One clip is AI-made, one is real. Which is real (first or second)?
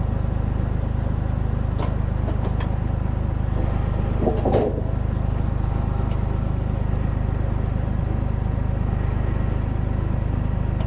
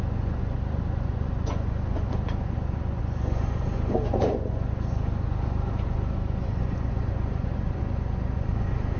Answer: first